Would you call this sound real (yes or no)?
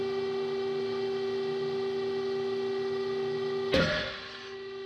yes